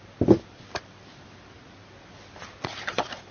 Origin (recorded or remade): remade